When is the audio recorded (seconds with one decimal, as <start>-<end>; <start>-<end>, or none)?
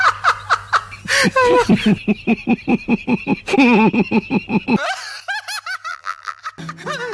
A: 0.0-5.9; 6.4-7.1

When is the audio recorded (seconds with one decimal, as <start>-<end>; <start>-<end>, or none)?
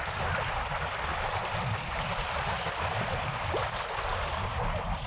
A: 0.0-5.1